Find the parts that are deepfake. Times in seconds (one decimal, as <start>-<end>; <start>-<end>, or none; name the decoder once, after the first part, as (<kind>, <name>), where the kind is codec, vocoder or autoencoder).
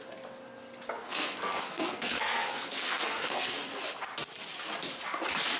1.0-3.7 (codec, SNAC)